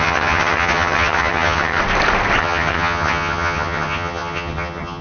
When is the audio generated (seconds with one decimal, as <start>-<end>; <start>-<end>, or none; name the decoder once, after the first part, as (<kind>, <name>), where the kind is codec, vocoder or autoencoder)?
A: 0.0-1.8 (vocoder, HiFi-GAN); 2.4-5.0